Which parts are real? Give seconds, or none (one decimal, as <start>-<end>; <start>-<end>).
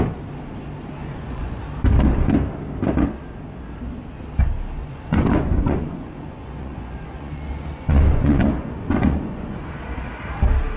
0.0-1.0; 1.6-4.8; 9.8-10.8